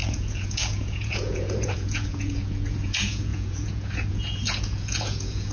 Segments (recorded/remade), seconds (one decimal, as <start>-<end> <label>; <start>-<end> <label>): 0.0-5.5 remade